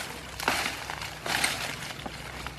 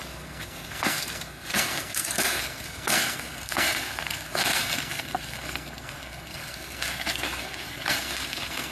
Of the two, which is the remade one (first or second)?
second